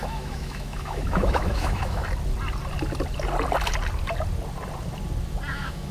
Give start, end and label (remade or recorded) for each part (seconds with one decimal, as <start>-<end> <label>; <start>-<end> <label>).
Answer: 0.0-2.0 remade; 2.0-5.5 recorded; 5.5-5.9 remade